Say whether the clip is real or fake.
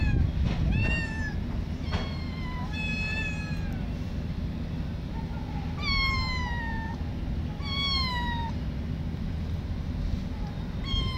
real